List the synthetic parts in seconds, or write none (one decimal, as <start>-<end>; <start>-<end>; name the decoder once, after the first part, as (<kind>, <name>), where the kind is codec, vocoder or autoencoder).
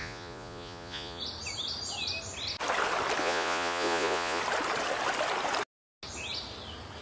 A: 0.0-1.2 (vocoder, Vocos); 3.2-4.4